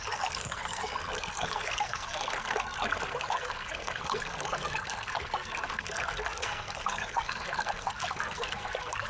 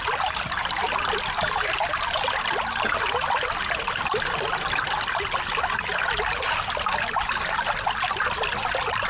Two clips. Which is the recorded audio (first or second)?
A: second